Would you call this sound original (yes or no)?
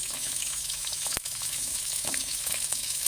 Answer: no